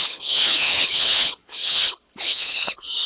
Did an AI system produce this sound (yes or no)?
yes